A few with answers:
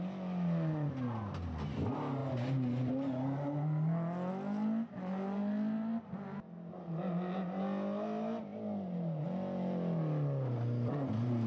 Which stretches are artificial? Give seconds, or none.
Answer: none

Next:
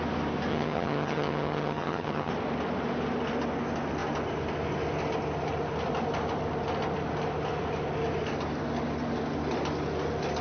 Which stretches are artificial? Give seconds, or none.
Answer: 0.5-2.3 (vocoder, HiFi-GAN)

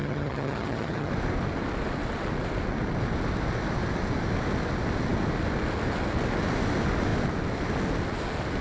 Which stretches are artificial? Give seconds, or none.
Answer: 0.0-1.1 (vocoder, HiFi-GAN)

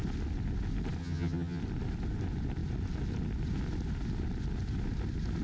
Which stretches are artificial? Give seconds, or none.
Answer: 1.0-1.6 (vocoder, HiFi-GAN)

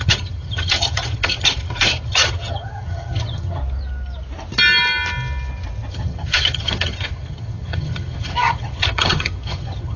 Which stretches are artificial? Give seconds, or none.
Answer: 0.0-3.6 (vocoder, HiFi-GAN); 5.9-10.0

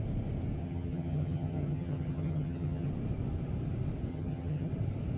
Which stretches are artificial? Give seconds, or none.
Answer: 0.6-2.9 (vocoder, HiFi-GAN); 4.1-4.7

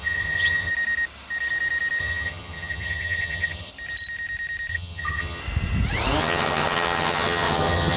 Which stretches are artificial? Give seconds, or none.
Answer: 0.0-0.7 (vocoder, HiFi-GAN); 2.0-3.7; 4.7-5.4; 6.2-8.0